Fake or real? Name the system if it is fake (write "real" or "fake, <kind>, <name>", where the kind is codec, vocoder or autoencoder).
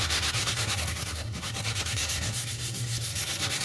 fake, codec, SNAC